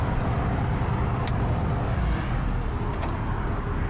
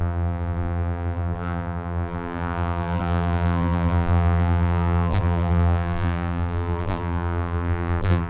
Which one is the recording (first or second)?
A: first